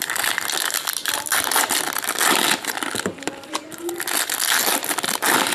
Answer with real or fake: real